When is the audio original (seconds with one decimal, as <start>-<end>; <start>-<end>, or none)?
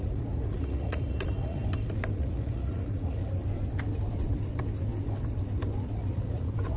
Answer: 1.6-2.2; 3.2-6.1